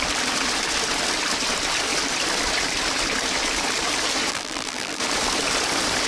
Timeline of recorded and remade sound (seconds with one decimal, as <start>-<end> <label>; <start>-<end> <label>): 0.0-4.3 recorded; 4.3-5.0 remade; 5.0-6.1 recorded